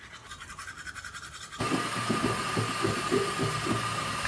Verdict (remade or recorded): recorded